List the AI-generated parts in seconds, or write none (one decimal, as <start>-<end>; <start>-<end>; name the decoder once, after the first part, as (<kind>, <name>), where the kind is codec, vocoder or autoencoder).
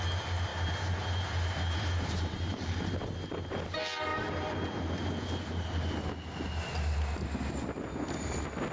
0.5-3.0 (vocoder, BigVGAN v2); 4.1-5.0